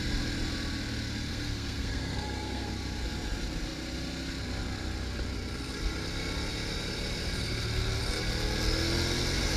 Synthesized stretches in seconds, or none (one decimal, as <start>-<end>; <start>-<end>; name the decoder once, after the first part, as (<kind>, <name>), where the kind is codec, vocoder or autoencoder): 1.3-2.7 (codec, SNAC)